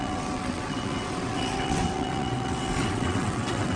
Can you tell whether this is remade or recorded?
remade